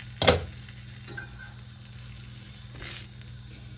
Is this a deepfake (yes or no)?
no